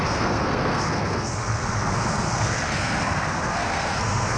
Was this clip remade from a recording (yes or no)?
yes